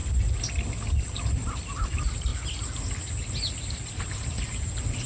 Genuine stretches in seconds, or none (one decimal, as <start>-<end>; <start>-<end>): 0.0-1.0; 2.3-3.7